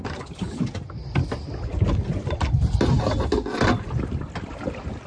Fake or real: real